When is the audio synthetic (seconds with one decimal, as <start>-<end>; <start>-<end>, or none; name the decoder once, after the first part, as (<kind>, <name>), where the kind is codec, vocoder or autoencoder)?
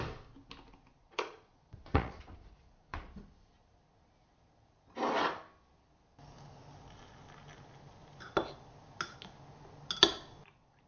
1.0-3.1 (vocoder, Vocos)